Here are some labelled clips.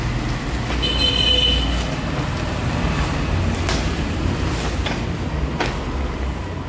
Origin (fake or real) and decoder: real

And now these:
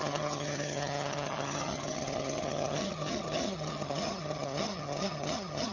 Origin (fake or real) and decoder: fake, vocoder, HiFi-GAN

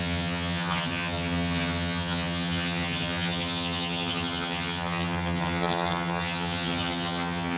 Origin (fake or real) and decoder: fake, vocoder, HiFi-GAN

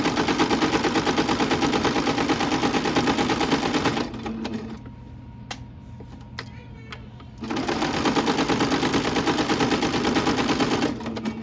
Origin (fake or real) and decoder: real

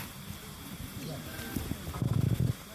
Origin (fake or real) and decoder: fake, vocoder, BigVGAN v2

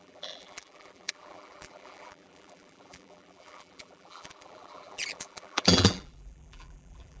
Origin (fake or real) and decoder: fake, vocoder, BigVGAN v2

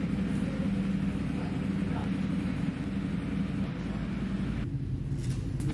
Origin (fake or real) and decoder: real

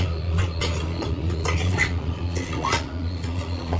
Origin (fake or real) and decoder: fake, vocoder, Vocos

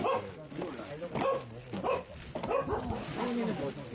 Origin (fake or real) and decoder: real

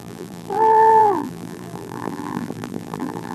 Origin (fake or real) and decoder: fake, vocoder, BigVGAN v2